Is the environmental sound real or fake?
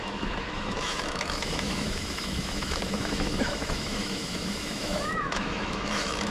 fake